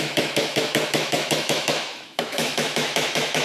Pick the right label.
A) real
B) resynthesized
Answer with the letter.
B